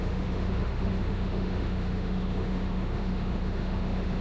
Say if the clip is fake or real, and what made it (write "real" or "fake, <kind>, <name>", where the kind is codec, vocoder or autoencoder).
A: fake, autoencoder, DAC-VAE